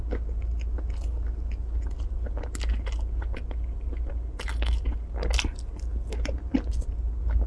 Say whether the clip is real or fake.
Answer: real